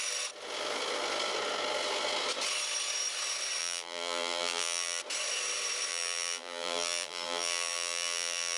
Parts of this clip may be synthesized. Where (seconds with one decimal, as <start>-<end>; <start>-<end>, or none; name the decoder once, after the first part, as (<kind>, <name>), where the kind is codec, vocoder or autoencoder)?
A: 3.6-5.0 (vocoder, BigVGAN v2); 5.9-8.6